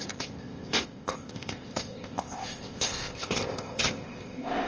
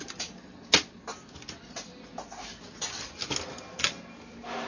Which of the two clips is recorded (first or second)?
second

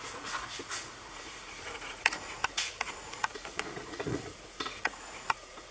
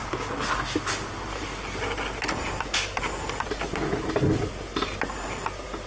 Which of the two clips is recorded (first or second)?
second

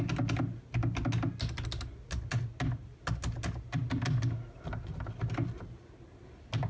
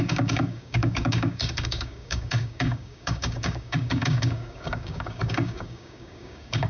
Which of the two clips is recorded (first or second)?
first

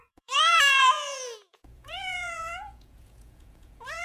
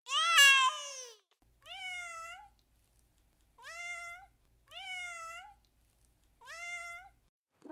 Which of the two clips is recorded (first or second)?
second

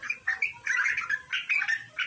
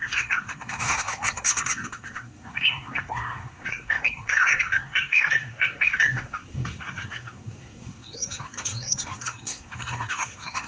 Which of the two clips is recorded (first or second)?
first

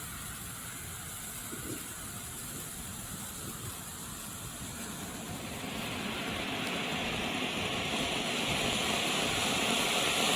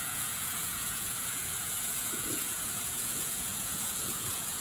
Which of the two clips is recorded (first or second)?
first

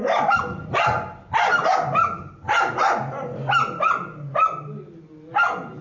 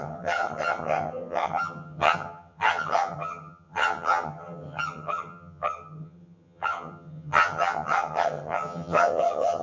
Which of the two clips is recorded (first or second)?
first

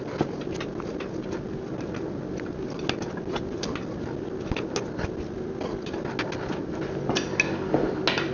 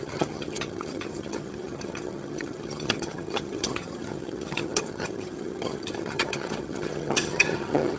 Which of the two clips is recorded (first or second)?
first